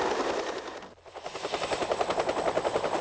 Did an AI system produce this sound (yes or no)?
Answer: no